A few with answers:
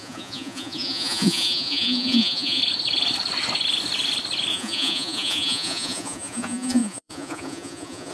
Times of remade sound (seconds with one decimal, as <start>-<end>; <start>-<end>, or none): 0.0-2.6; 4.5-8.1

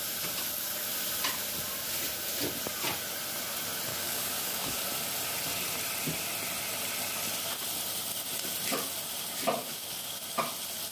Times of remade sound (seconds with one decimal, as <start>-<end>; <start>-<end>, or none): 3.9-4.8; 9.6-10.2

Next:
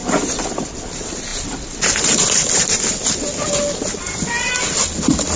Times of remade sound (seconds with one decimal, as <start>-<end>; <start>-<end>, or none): none

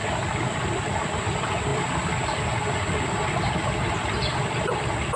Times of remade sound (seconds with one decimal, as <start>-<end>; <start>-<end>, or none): none

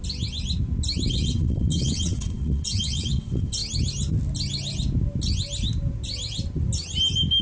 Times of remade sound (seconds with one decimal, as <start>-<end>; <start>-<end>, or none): 1.1-3.6